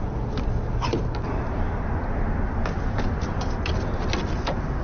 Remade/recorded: recorded